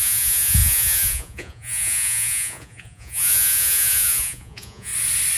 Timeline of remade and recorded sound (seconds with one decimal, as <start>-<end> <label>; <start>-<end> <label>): 0.0-4.9 remade; 4.9-5.4 recorded